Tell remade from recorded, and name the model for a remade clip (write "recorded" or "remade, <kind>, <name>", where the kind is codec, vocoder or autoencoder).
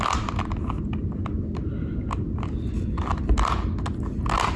recorded